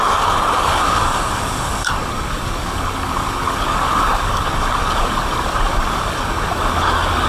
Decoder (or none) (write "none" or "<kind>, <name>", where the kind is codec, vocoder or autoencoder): codec, DAC